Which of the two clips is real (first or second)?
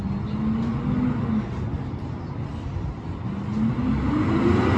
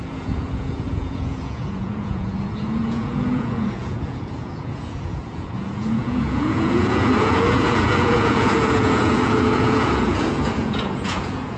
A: first